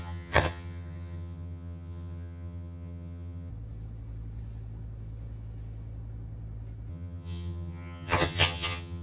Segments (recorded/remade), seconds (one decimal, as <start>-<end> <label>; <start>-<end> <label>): 0.0-3.5 remade; 3.5-6.9 recorded; 6.9-9.0 remade